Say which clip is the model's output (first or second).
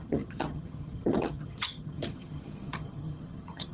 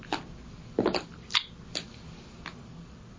first